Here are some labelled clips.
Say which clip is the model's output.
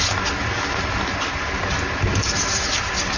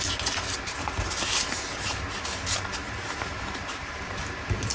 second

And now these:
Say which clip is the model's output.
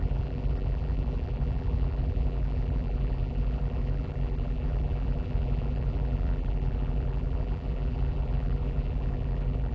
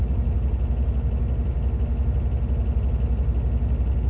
first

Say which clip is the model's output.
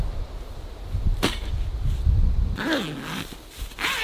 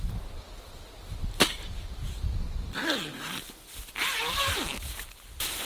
second